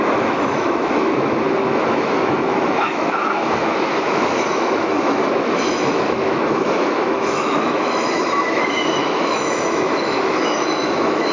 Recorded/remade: remade